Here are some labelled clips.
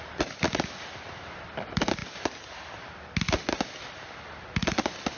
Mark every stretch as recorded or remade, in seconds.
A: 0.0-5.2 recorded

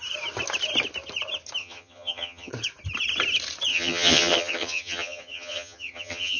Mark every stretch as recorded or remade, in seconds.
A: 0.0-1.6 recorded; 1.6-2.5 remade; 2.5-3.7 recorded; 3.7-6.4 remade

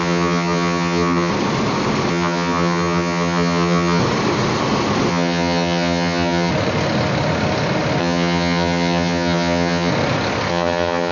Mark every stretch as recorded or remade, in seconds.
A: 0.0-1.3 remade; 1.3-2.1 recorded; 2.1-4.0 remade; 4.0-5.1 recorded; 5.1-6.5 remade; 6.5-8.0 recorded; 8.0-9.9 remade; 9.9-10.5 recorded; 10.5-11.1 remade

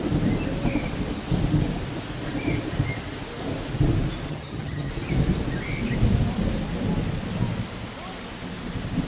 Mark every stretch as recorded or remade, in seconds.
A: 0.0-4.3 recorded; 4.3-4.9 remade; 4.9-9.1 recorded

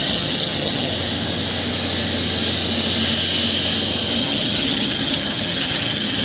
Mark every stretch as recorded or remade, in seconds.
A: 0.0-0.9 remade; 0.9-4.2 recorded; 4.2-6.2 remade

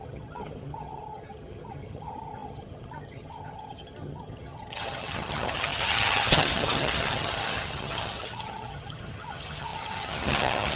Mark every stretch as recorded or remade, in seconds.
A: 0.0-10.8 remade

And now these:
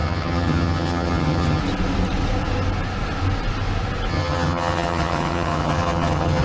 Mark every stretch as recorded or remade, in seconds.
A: 0.0-1.6 remade; 1.6-4.1 recorded; 4.1-6.4 remade